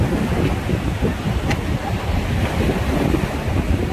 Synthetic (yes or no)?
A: no